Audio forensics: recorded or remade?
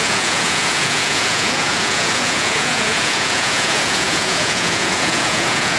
remade